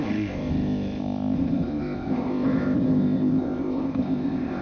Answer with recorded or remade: remade